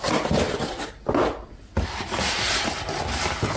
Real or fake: real